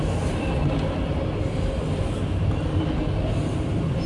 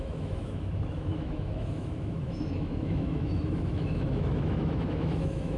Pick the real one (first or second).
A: first